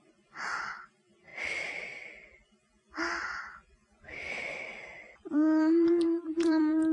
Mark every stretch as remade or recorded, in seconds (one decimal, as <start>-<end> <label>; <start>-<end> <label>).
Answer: 0.0-1.3 remade; 1.3-4.8 recorded; 4.8-6.9 remade